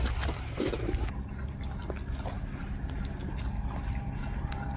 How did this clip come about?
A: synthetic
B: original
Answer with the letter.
B